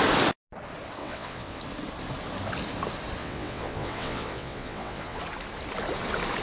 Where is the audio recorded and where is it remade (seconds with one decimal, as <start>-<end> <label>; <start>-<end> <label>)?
0.0-1.0 recorded; 1.0-1.6 remade; 1.6-3.2 recorded; 3.2-5.2 remade; 5.2-6.4 recorded